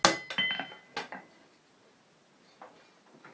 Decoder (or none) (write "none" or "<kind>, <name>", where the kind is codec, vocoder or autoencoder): none